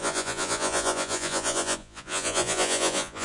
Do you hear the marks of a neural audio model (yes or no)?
yes